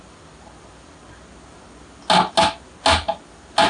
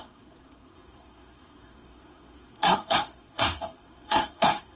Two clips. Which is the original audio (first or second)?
first